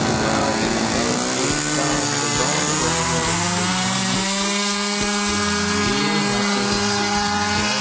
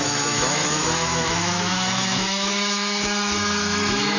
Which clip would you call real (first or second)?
first